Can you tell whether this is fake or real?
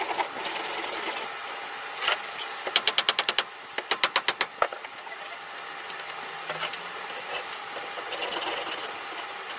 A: real